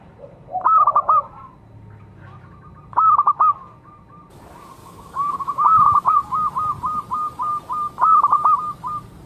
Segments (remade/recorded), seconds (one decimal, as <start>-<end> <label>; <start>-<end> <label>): 0.0-4.8 recorded; 4.8-6.5 remade; 6.5-9.3 recorded